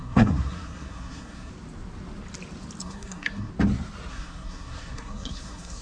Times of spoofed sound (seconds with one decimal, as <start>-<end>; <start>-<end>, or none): 0.0-1.5; 2.8-3.5; 4.1-5.8